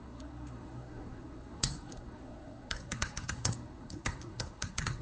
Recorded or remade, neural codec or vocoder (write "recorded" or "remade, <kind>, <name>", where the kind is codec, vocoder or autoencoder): remade, codec, SNAC